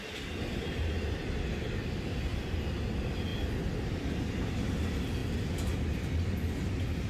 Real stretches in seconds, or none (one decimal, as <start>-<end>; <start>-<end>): 0.0-7.1